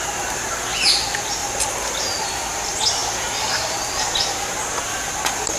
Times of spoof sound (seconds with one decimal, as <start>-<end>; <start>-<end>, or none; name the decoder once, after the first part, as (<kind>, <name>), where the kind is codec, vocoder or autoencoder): none